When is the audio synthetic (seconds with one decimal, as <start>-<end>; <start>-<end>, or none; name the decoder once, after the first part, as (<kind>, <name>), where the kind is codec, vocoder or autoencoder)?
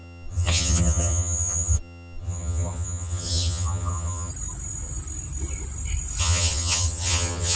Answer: 0.0-4.3 (vocoder, HiFi-GAN); 6.2-7.6